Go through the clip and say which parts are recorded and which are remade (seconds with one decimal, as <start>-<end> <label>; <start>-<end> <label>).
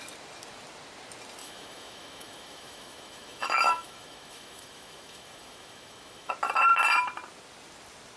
0.0-1.4 recorded; 1.4-6.3 remade; 6.3-8.2 recorded